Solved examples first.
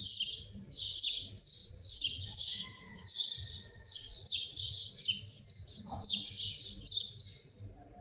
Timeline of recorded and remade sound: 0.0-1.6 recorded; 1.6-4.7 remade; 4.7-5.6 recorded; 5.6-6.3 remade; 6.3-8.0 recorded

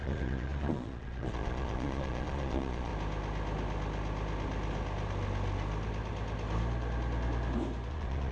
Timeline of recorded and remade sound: 0.0-2.9 remade; 2.9-7.9 recorded; 7.9-8.3 remade

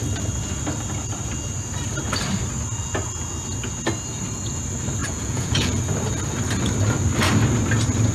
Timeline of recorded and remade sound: 0.0-5.0 recorded; 5.0-5.8 remade; 5.8-8.1 recorded